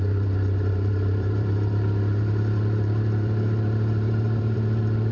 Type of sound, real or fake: fake